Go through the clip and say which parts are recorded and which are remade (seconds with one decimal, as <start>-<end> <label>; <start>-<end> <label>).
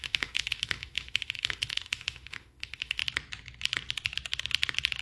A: 0.0-3.0 remade; 3.0-5.0 recorded